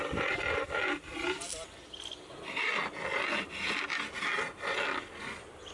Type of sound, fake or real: real